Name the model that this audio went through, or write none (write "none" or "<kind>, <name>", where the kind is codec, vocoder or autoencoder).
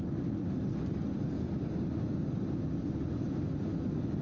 none